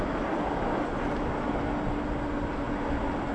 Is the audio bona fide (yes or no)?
yes